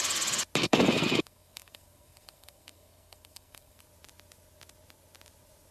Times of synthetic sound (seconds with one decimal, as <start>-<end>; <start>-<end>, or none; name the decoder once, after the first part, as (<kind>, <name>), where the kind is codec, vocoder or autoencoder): 0.6-3.8 (codec, SNAC)